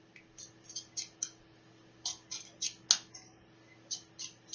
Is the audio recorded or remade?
recorded